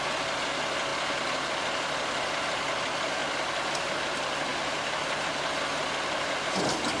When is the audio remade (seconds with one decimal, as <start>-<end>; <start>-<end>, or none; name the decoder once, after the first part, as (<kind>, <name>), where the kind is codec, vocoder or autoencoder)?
0.0-3.2 (vocoder, BigVGAN v2); 3.7-7.0